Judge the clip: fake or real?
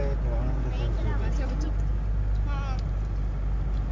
real